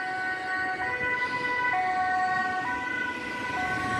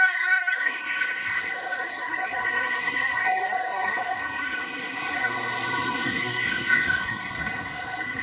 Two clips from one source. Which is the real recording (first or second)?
first